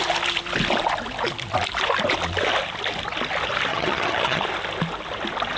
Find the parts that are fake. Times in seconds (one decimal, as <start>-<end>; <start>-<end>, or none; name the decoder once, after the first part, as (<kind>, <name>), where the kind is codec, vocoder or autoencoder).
3.7-4.4 (vocoder, HiFi-GAN)